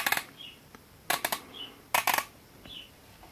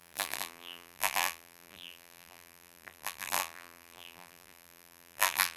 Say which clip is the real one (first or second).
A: first